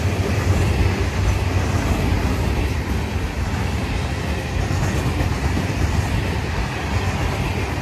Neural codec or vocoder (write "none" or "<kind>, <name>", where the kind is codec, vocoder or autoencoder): none